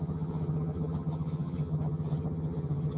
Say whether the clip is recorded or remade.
remade